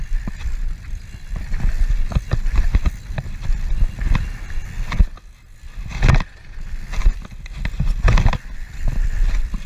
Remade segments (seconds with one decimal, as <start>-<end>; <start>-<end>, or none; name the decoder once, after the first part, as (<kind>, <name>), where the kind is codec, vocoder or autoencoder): 0.0-4.6 (vocoder, BigVGAN v2); 7.0-9.7